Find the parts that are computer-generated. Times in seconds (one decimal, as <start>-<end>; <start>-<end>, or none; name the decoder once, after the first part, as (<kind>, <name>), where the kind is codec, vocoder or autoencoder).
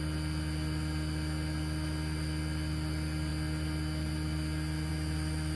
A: none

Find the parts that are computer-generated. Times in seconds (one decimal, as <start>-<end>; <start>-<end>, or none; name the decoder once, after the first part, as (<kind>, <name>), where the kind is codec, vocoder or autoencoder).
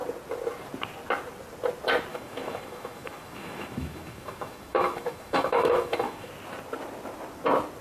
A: 2.1-6.3 (autoencoder, DAC-VAE)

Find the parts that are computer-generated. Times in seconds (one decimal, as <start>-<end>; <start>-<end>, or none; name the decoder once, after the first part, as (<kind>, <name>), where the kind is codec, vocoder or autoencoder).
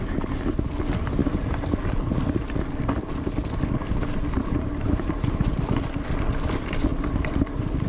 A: 4.4-5.4 (vocoder, BigVGAN v2)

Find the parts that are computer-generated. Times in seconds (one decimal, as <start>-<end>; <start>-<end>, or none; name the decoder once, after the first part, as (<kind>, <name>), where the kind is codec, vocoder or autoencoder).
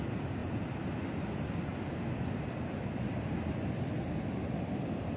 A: none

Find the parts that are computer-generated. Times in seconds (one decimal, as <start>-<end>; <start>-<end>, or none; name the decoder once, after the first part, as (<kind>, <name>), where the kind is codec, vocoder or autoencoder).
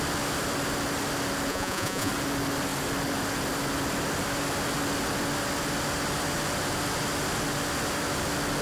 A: 1.5-2.1 (vocoder, Vocos)